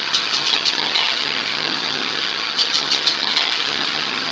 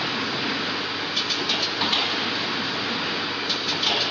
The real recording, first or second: second